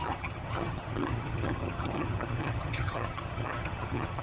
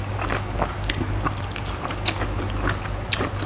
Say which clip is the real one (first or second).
second